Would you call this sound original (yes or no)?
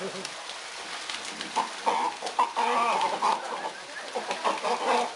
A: yes